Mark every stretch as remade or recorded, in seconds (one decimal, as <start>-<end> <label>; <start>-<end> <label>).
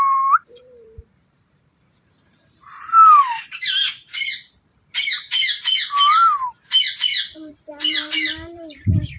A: 0.0-9.2 remade